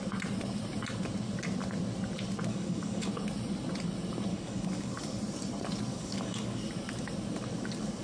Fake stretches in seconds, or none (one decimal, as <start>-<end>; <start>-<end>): 2.5-3.1; 4.3-5.2; 5.9-6.7